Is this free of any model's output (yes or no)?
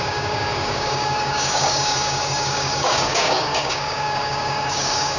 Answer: no